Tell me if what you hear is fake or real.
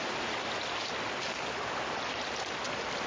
real